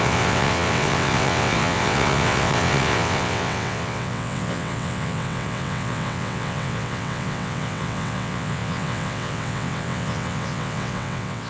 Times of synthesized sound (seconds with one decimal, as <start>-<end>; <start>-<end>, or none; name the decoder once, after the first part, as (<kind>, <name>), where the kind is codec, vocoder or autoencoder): 0.0-11.5 (vocoder, WaveNeXt)